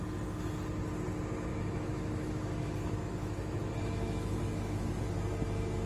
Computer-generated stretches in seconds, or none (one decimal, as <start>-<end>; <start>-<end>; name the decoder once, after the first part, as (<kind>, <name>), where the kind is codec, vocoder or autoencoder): 1.5-5.0 (autoencoder, DAC-VAE)